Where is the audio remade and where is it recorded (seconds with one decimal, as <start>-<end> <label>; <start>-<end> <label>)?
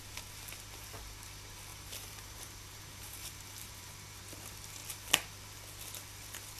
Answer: 0.0-1.7 recorded; 1.7-3.9 remade; 3.9-6.6 recorded